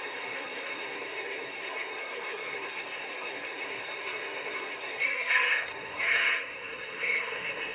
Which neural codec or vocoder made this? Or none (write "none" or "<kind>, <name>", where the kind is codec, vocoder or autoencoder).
codec, SNAC